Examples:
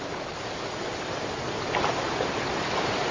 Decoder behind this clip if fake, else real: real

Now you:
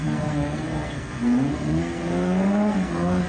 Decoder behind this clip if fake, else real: fake, codec, SNAC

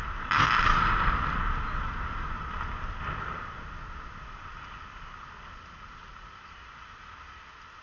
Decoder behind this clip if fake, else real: real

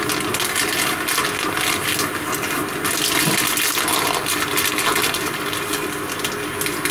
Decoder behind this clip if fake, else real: real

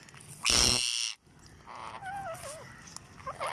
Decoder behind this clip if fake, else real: real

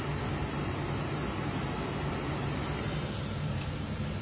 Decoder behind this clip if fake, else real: real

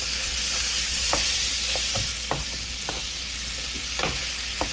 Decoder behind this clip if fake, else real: real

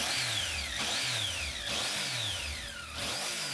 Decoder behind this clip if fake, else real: real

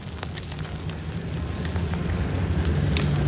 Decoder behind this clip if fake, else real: real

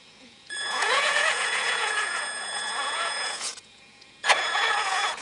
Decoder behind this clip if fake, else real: fake, vocoder, Vocos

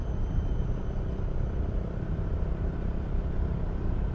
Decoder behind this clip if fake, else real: real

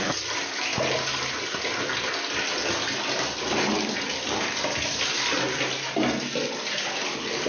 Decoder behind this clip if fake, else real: real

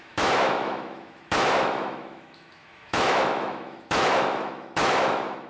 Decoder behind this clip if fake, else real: fake, autoencoder, DAC-VAE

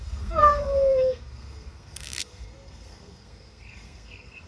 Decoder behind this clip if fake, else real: fake, codec, SNAC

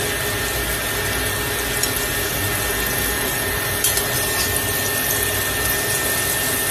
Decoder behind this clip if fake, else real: real